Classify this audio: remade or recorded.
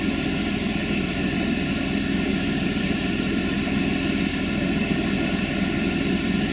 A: recorded